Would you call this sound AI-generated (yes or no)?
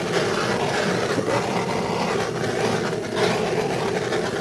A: no